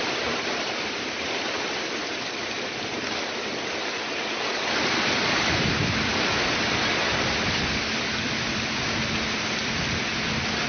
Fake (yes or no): no